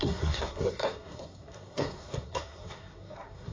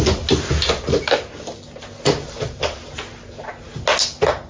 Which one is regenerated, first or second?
first